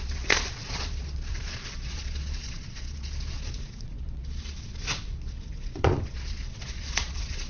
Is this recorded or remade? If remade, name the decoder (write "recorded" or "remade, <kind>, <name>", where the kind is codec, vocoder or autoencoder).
remade, vocoder, Vocos